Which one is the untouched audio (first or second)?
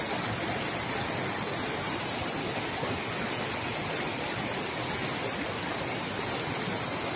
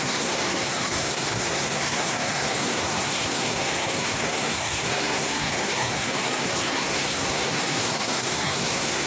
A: first